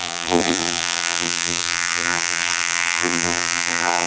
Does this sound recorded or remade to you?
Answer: remade